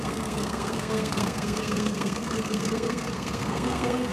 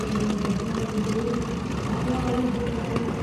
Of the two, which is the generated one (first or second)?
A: first